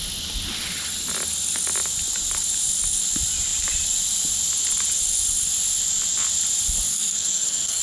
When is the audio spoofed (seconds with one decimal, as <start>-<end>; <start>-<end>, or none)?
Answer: 6.9-7.8